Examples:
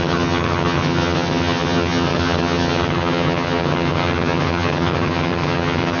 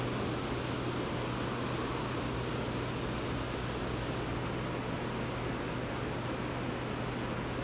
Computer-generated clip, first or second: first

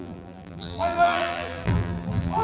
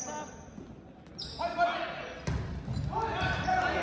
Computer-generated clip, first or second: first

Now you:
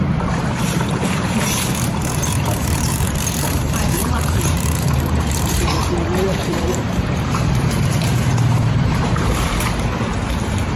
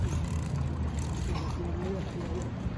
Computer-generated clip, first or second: first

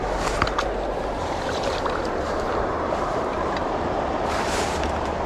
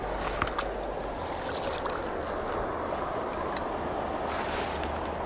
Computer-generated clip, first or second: first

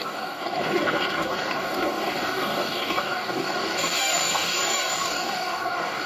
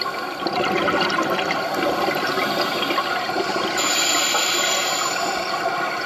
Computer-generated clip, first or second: first